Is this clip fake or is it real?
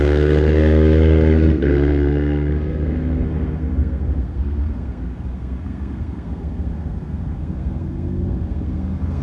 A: fake